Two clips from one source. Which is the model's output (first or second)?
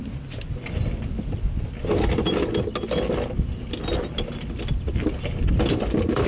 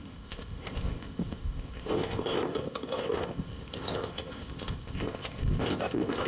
second